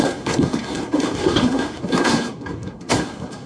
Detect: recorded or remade remade